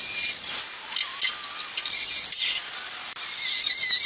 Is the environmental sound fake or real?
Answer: real